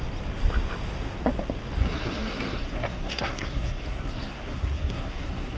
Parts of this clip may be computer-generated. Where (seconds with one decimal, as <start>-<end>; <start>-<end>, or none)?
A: 1.8-5.6